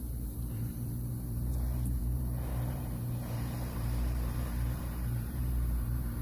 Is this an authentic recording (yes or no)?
no